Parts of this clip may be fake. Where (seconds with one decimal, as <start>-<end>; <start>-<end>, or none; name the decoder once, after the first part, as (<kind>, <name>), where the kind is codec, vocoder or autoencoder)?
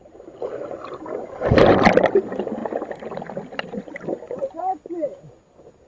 none